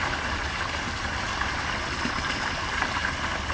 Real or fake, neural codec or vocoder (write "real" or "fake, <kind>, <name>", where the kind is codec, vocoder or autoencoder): real